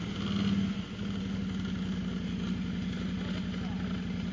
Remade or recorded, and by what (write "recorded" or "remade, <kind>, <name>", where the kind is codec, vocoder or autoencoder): recorded